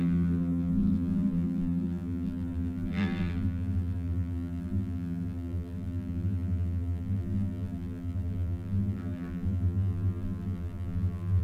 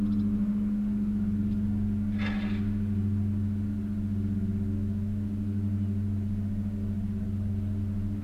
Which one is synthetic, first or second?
first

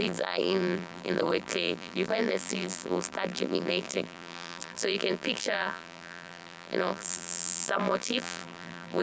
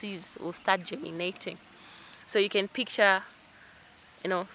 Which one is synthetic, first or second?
first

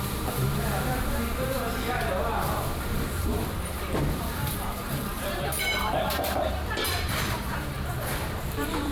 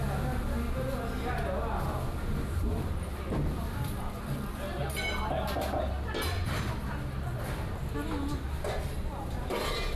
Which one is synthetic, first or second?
first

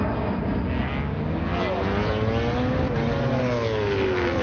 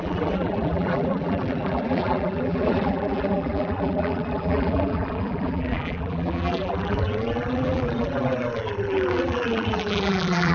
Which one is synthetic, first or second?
second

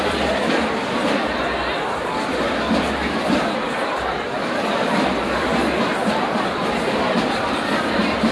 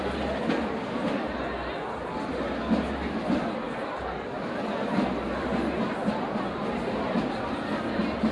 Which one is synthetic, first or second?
first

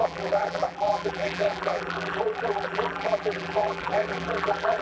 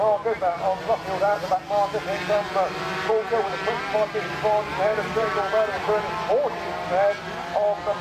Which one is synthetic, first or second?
first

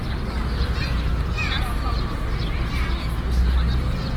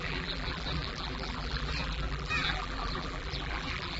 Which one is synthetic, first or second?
second